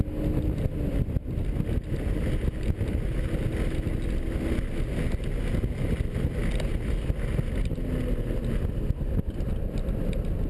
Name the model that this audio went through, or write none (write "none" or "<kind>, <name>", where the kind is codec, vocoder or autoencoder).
none